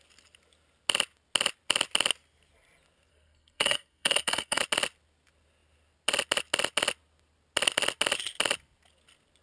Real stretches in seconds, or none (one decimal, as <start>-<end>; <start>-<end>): 0.0-3.1; 4.6-9.4